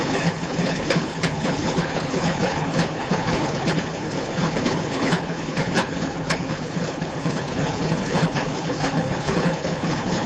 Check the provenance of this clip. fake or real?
fake